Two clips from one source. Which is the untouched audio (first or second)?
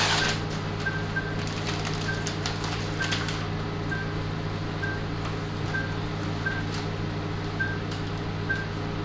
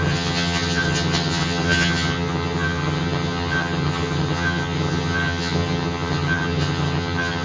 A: first